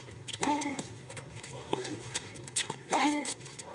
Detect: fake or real fake